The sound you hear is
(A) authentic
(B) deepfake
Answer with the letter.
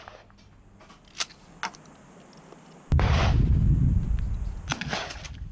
A